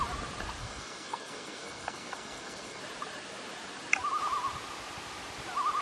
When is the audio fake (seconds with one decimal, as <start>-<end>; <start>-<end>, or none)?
0.6-2.8